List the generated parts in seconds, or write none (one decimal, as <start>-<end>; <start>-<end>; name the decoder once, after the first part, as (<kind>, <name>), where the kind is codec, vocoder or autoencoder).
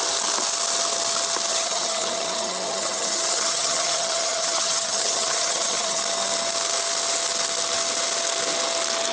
1.5-6.0 (vocoder, HiFi-GAN)